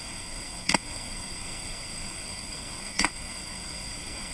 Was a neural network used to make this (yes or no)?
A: yes